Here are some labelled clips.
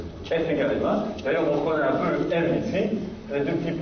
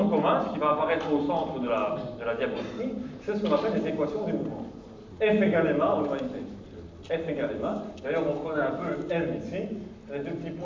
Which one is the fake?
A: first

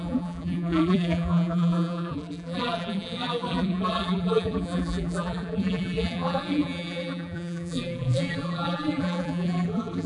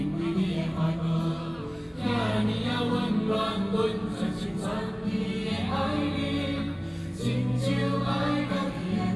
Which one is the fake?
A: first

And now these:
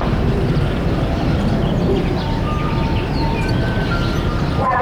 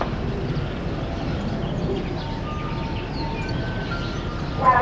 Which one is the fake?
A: first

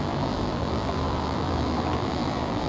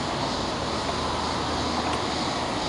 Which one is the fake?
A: first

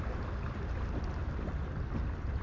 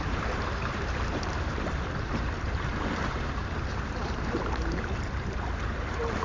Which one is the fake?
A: second